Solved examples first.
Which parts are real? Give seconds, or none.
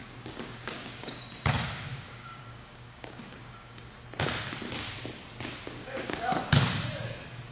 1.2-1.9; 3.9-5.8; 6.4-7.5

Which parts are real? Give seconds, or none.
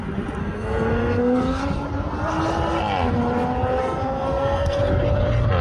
0.0-0.4; 1.6-3.8; 4.8-5.6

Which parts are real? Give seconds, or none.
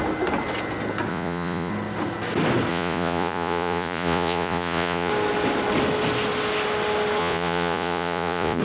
0.0-1.1; 1.7-2.7; 5.1-7.2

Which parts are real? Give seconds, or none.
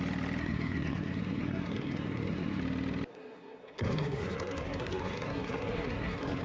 0.0-0.4; 2.6-3.1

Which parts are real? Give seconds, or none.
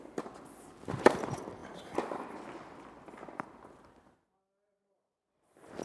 0.0-5.8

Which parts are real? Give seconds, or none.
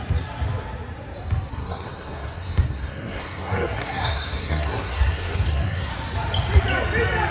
0.0-1.5; 5.9-7.3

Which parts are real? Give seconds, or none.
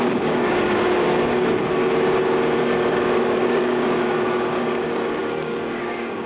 1.6-2.9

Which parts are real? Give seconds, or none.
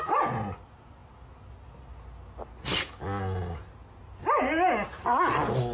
0.0-5.7